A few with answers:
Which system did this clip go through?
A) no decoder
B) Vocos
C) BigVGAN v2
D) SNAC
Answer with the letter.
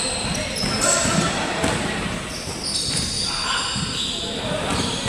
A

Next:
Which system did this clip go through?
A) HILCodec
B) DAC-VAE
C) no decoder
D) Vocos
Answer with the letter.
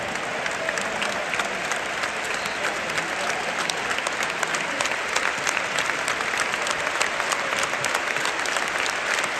C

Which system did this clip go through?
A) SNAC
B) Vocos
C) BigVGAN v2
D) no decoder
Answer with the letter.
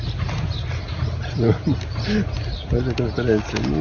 D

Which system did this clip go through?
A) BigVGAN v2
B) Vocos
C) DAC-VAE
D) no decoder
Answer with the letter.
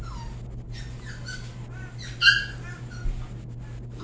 D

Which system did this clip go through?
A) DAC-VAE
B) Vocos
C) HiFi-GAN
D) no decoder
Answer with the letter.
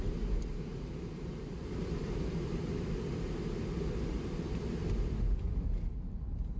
D